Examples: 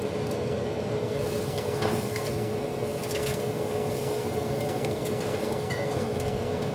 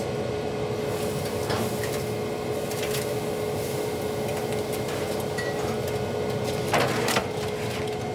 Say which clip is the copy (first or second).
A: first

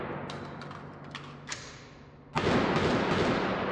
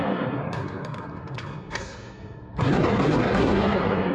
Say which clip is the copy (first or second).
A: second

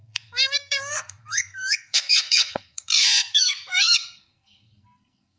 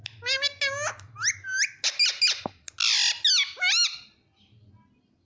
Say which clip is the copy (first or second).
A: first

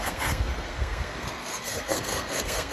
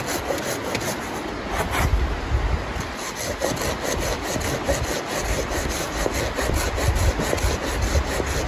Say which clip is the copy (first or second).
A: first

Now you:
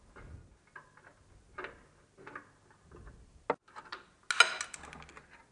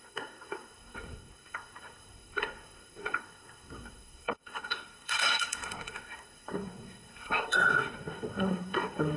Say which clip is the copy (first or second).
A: second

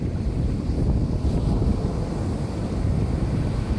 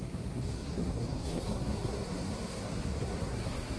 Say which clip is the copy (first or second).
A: second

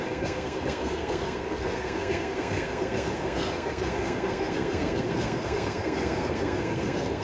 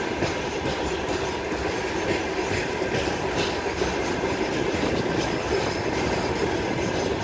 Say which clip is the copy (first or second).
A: first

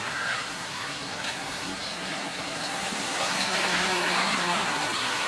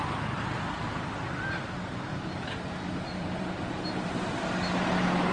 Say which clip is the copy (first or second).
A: first